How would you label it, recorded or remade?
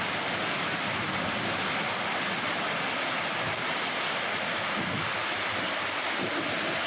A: recorded